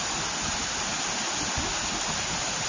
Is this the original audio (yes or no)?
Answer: yes